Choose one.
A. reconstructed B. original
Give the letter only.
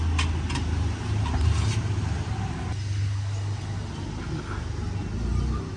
B